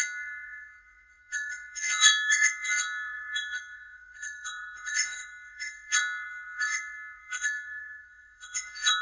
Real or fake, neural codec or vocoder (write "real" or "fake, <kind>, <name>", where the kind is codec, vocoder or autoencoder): fake, vocoder, WaveNeXt